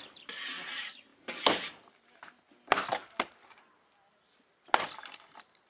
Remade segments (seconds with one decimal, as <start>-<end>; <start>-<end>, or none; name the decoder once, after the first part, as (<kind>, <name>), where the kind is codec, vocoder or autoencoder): none